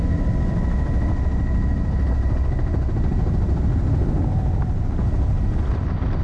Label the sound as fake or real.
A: real